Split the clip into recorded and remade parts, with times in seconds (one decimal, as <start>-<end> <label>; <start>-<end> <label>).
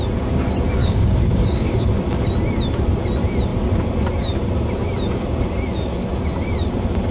0.0-0.8 recorded; 0.8-1.9 remade; 1.9-7.1 recorded